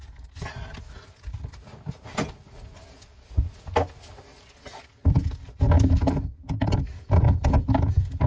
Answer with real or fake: real